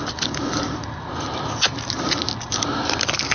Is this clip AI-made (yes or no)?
no